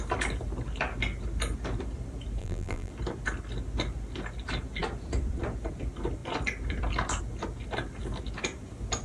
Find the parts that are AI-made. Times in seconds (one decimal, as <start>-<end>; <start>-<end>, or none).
2.4-2.9